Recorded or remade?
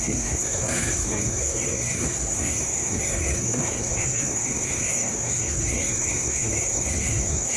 remade